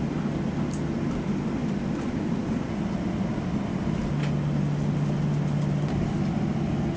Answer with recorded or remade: recorded